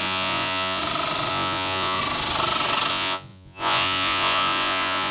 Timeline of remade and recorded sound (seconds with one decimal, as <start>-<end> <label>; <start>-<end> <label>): 0.0-0.8 remade; 0.8-1.3 recorded; 1.3-2.0 remade; 2.0-2.9 recorded; 2.9-5.1 remade